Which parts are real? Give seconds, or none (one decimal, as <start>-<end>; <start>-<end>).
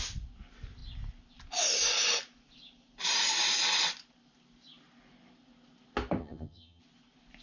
0.0-6.2; 6.8-7.4